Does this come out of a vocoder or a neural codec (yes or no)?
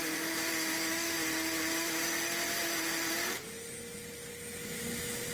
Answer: no